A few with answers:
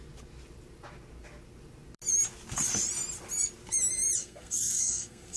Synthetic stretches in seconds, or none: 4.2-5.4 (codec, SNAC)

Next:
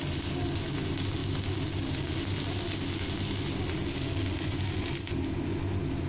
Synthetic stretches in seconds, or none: none

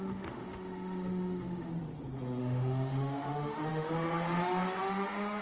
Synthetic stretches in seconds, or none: 0.0-1.7 (autoencoder, DAC-VAE); 2.4-5.4

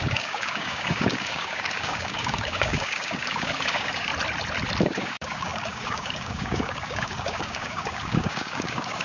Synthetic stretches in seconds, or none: 0.0-4.1 (codec, DAC); 4.8-9.0